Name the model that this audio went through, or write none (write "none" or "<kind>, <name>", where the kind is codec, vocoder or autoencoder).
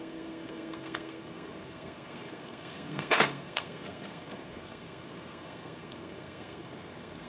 codec, SNAC